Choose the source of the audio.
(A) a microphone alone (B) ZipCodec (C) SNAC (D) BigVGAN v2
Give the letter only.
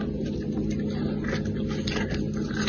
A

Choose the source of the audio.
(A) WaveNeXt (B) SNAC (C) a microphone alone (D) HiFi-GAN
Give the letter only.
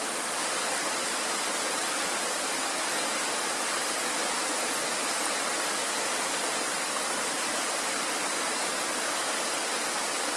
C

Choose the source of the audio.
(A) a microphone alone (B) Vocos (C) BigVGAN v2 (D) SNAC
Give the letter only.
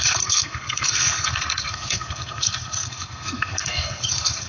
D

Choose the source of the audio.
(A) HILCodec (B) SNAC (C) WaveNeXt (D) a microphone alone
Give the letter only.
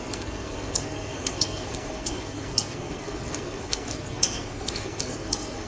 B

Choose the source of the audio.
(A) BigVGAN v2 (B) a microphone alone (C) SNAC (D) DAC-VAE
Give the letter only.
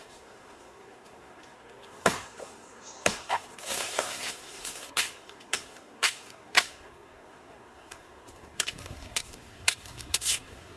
C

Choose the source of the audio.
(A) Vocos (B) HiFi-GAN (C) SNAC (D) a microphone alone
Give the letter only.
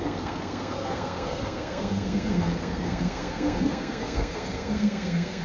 C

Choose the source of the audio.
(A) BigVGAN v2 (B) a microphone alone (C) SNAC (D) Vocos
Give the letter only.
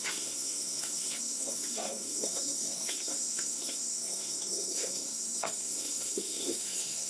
C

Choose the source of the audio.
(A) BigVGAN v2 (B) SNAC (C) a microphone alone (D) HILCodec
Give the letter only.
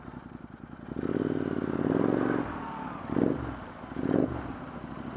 C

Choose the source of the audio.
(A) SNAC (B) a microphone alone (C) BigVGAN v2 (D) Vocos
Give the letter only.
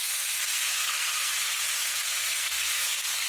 A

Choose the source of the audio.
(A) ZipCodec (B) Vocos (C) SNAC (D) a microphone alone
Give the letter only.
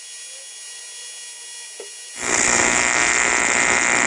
D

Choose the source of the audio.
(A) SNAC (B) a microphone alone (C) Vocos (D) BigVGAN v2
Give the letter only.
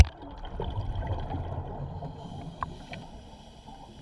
B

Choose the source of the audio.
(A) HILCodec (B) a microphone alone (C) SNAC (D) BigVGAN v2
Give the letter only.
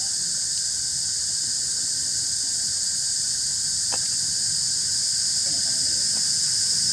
B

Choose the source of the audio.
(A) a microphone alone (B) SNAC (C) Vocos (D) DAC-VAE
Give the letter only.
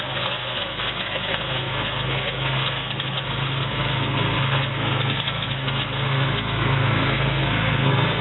B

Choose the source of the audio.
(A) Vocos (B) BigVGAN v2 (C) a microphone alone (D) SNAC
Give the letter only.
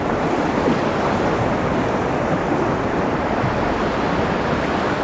C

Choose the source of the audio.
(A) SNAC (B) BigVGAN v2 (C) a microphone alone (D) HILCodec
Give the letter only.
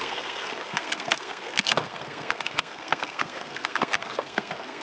A